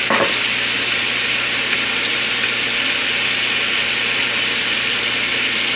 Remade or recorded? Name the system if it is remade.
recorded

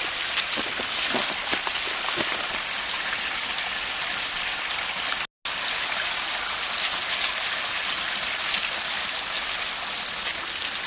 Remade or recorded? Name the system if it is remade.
recorded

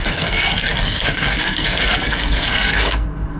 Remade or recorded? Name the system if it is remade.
remade, codec, SNAC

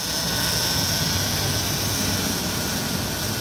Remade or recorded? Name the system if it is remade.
recorded